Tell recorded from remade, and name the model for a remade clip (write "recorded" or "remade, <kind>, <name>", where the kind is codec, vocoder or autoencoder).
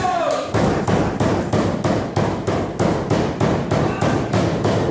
recorded